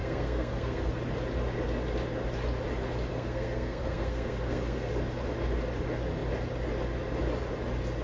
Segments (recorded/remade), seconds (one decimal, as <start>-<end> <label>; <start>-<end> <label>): 0.0-0.9 remade; 0.9-3.1 recorded; 3.1-4.9 remade; 4.9-8.0 recorded

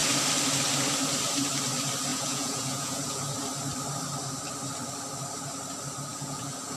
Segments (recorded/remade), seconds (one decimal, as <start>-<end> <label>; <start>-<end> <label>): 0.0-2.1 recorded; 2.1-3.2 remade; 3.2-6.1 recorded; 6.1-6.8 remade

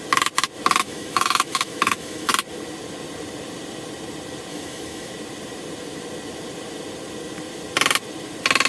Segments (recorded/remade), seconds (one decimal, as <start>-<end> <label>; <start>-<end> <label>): 0.0-0.8 recorded; 0.8-2.3 remade; 2.3-4.5 recorded; 4.5-5.1 remade; 5.1-8.7 recorded